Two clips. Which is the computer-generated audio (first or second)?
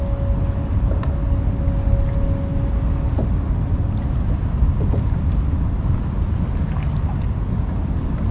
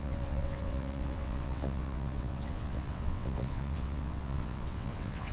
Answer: second